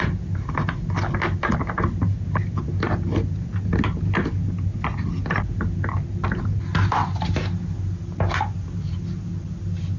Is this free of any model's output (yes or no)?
yes